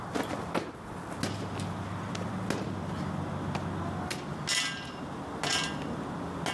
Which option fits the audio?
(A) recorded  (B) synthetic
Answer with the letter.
A